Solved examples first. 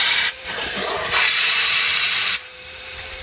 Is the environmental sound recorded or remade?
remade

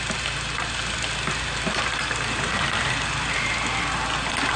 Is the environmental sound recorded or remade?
recorded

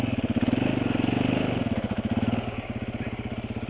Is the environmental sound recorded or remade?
recorded